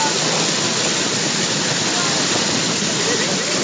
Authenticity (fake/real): real